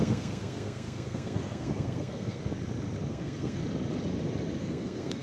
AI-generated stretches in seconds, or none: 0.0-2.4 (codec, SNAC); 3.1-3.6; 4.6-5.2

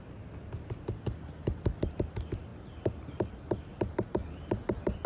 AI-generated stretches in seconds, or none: none

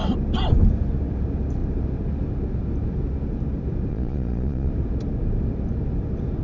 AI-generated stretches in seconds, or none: 3.9-4.7 (vocoder, Vocos)

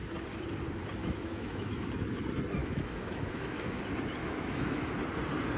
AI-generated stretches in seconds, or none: 1.0-1.9 (autoencoder, DAC-VAE); 2.6-3.8; 4.2-4.9

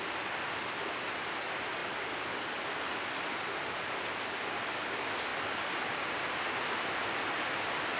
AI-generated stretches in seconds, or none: none

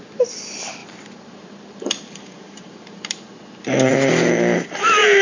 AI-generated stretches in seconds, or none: 0.8-3.9 (vocoder, BigVGAN v2)

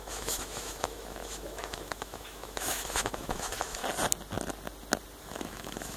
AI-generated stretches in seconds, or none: 0.0-3.8 (autoencoder, DAC-VAE); 5.2-6.0

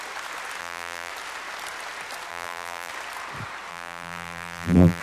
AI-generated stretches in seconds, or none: 0.6-1.1 (vocoder, BigVGAN v2); 2.3-2.9; 3.7-5.0